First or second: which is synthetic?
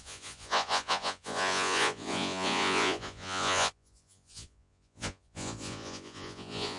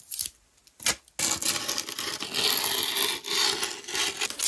first